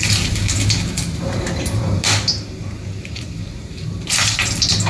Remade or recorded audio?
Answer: remade